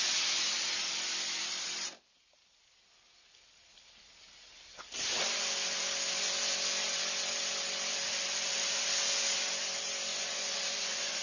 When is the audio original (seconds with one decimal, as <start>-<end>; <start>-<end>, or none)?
0.0-10.1